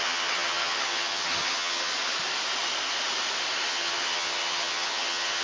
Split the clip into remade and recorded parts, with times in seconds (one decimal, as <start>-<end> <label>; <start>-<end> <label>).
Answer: 0.0-1.9 remade; 1.9-3.7 recorded; 3.7-5.4 remade